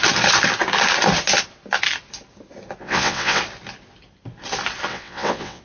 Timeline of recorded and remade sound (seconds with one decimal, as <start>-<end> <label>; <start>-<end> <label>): 0.0-2.8 recorded; 2.8-3.4 remade; 3.4-4.9 recorded; 4.9-5.6 remade